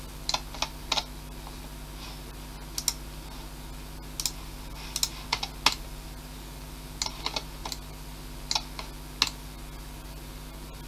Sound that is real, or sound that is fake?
real